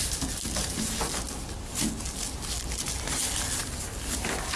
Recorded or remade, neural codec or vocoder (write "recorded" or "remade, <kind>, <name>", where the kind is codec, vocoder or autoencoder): recorded